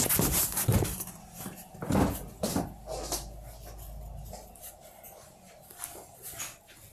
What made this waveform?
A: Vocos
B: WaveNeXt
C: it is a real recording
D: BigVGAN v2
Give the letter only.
C